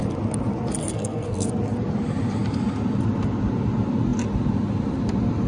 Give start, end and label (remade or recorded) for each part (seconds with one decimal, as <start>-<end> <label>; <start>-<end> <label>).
0.0-0.8 recorded; 0.8-1.5 remade; 1.5-5.5 recorded